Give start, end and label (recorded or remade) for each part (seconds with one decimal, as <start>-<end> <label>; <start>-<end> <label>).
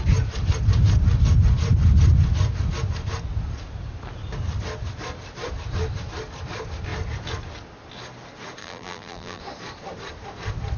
0.0-8.6 recorded; 8.6-9.4 remade; 9.4-10.8 recorded